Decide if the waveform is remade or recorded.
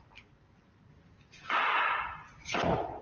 recorded